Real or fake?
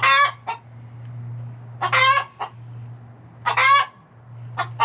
real